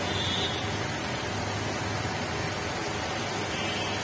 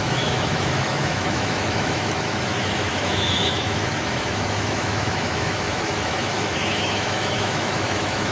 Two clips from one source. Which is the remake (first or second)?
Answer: second